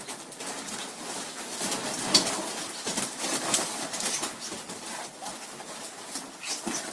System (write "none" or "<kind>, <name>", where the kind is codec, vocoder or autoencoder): none